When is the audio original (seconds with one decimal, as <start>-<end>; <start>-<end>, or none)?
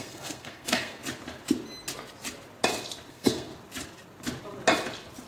1.0-3.1; 3.5-5.3